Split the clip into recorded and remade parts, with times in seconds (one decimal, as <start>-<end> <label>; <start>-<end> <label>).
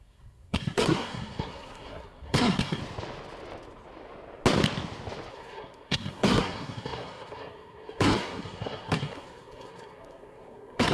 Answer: 0.0-2.8 remade; 2.8-5.3 recorded; 5.3-10.9 remade